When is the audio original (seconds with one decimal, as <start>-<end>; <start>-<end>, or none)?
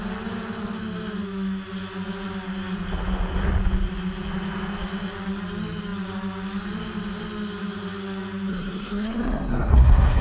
0.0-8.5